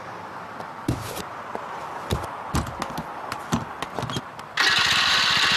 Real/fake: real